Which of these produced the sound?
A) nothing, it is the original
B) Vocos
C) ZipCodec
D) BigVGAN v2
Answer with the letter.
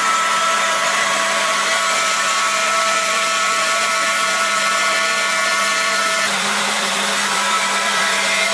D